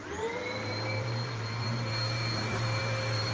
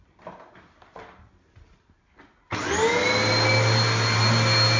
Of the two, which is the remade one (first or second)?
first